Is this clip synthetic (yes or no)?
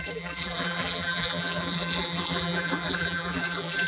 yes